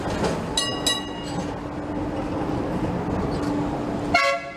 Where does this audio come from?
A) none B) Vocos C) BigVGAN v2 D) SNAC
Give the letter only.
A